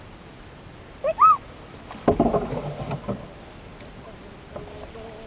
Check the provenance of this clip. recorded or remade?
recorded